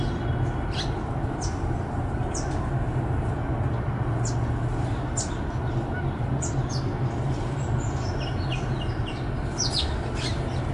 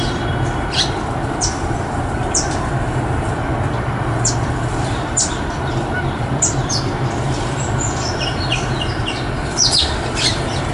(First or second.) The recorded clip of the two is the first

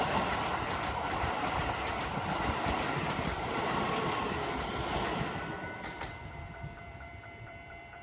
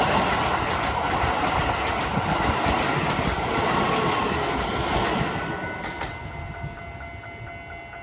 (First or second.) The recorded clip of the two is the second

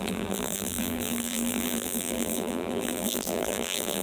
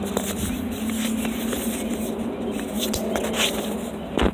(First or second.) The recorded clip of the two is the second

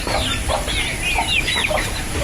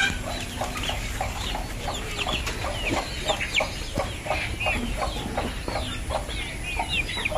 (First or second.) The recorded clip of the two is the second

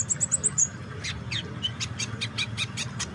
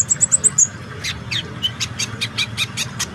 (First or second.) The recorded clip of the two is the second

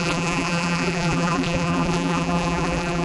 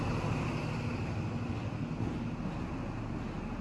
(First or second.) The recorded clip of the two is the second